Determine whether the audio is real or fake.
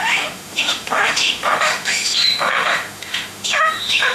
fake